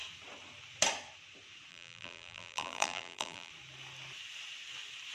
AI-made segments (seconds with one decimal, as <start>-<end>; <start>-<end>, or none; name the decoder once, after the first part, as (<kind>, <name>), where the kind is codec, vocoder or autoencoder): 1.7-3.5 (vocoder, BigVGAN v2)